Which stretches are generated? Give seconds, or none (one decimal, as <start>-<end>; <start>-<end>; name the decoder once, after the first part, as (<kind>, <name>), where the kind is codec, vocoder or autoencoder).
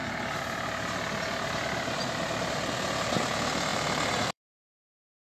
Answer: 3.7-4.7 (vocoder, BigVGAN v2)